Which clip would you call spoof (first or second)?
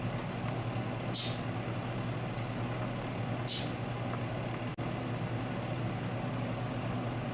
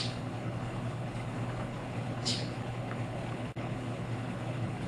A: second